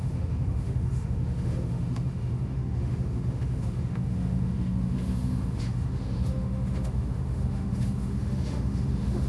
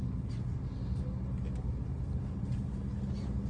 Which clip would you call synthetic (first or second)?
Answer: first